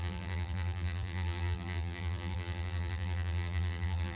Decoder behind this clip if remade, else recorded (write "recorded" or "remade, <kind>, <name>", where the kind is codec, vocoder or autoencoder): remade, vocoder, BigVGAN v2